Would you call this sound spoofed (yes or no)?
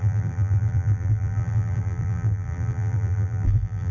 yes